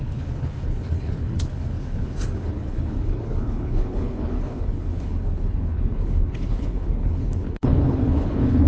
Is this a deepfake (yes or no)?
yes